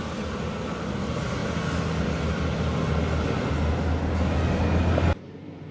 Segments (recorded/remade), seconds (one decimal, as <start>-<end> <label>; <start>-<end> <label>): 0.0-5.7 recorded